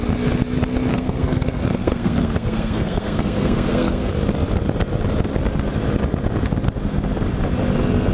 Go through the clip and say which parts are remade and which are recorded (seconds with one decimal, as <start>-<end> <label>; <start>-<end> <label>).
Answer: 0.0-0.9 recorded; 0.9-4.1 remade; 4.1-8.1 recorded